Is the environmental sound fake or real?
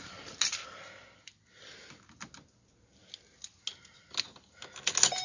real